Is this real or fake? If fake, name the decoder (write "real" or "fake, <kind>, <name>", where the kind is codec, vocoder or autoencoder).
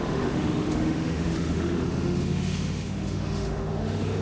fake, autoencoder, DAC-VAE